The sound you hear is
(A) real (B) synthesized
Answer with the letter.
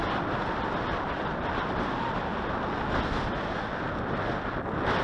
A